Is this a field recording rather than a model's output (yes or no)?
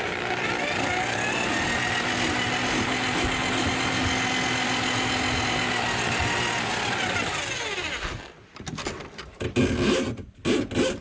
yes